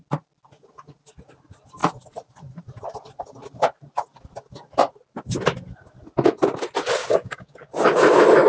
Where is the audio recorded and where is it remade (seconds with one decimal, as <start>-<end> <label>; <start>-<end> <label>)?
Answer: 0.0-7.0 recorded; 7.0-7.7 remade; 7.7-8.5 recorded